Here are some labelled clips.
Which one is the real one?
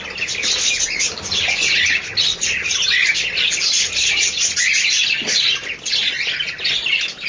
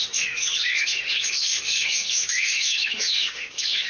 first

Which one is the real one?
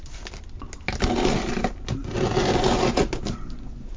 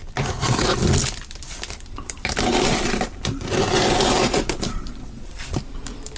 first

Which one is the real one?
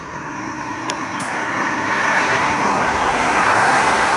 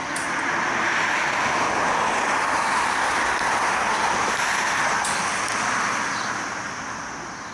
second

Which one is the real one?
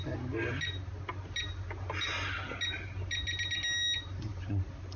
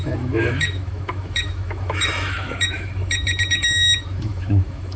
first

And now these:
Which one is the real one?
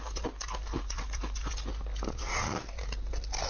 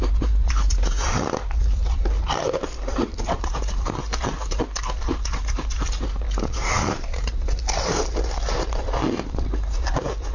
first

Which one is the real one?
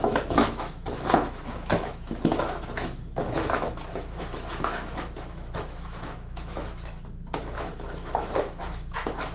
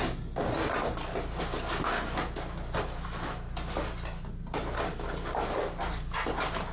second